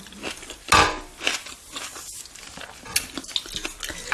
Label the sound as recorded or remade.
recorded